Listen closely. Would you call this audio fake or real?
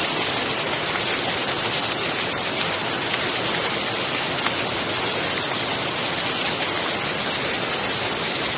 real